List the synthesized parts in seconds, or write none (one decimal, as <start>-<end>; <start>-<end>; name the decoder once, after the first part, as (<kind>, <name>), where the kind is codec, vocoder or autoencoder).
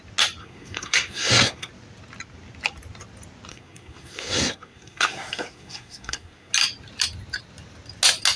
0.4-1.7 (codec, SNAC); 3.5-6.5